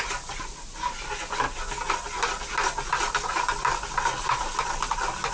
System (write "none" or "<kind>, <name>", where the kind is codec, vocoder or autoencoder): none